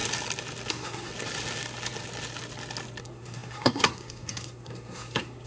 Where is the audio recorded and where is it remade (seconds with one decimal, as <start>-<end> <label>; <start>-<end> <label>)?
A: 0.0-0.7 recorded; 0.7-1.1 remade; 1.1-3.0 recorded; 3.0-5.5 remade